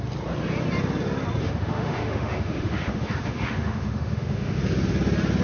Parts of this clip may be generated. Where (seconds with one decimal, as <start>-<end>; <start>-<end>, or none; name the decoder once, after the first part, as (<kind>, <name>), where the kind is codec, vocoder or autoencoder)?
1.4-4.6 (autoencoder, DAC-VAE)